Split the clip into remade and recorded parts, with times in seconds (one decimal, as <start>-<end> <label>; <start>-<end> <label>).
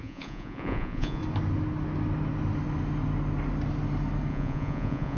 0.0-1.2 remade; 1.2-4.3 recorded; 4.3-5.2 remade